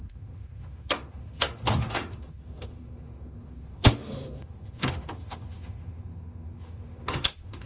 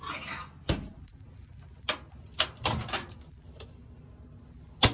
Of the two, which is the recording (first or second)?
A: second